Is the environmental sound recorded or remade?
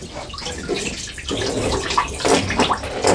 recorded